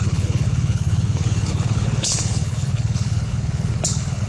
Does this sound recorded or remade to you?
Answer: remade